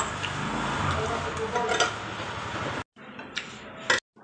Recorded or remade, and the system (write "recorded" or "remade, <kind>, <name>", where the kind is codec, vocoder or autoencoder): recorded